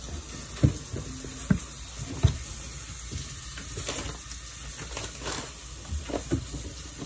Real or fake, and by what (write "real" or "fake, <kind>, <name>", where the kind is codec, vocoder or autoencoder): real